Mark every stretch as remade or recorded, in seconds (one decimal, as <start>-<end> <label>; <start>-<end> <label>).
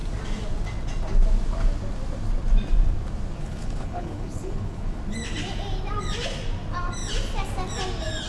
0.0-3.4 recorded; 3.4-5.0 remade; 5.0-8.3 recorded